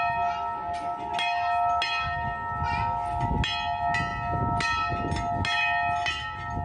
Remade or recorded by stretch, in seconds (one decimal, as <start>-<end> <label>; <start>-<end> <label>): 0.0-6.6 recorded